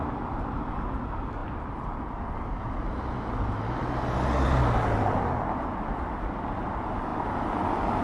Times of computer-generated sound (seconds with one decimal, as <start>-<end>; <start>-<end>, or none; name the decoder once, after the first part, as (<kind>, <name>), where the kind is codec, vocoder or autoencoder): none